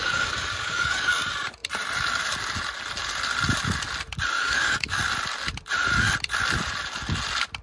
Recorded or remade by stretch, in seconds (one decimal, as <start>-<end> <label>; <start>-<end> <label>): 0.0-1.1 remade; 1.1-4.4 recorded; 4.4-5.0 remade; 5.0-7.6 recorded